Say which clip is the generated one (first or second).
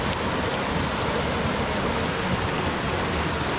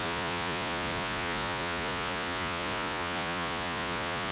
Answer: second